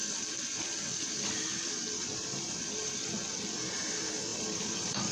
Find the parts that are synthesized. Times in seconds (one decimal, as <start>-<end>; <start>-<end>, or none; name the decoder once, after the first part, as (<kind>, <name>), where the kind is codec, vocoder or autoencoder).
0.0-3.1 (vocoder, BigVGAN v2); 4.3-5.1